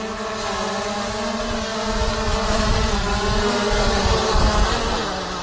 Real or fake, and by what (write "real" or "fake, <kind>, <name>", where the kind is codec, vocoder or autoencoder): real